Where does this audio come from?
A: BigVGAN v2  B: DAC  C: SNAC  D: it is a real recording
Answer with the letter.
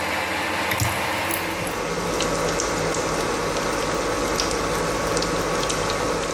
D